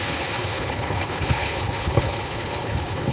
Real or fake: fake